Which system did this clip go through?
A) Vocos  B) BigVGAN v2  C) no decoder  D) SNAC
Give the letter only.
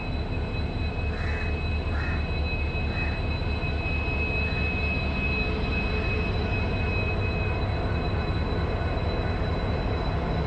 C